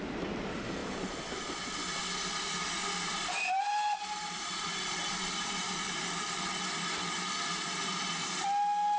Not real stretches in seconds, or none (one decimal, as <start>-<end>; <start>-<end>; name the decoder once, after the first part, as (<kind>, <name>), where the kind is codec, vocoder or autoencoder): 0.8-1.4 (vocoder, BigVGAN v2); 3.1-6.5